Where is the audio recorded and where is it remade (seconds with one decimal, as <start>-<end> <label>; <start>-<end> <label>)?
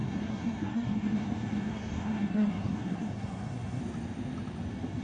0.0-3.8 remade; 3.8-5.0 recorded